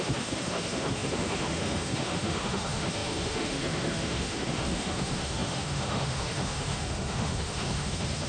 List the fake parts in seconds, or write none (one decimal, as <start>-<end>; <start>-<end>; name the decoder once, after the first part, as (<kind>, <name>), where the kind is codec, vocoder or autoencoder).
0.0-8.3 (autoencoder, DAC-VAE)